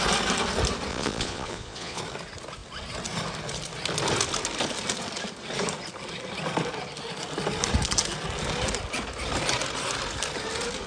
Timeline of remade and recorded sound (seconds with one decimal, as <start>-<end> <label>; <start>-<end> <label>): 0.0-0.9 recorded; 0.9-2.0 remade; 2.0-10.9 recorded

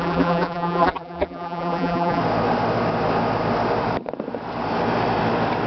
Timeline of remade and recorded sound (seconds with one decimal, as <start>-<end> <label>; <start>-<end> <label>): 0.0-2.2 remade; 2.2-5.7 recorded

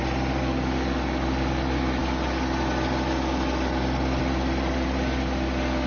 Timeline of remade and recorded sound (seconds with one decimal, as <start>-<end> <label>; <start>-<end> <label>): 0.0-5.9 recorded

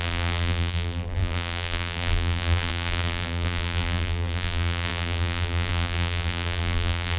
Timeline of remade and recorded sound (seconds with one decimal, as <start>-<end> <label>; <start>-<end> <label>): 0.0-7.2 remade